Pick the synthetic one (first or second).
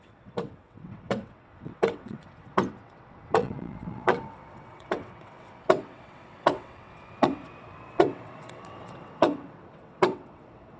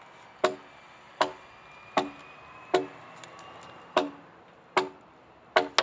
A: first